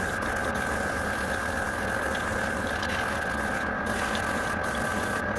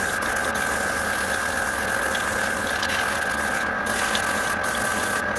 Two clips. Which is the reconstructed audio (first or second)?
first